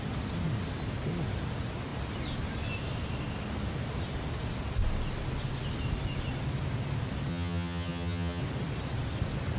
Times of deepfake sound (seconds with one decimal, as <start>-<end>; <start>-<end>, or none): 7.3-8.4